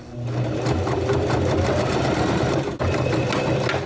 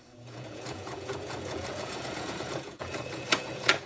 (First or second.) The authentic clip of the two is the first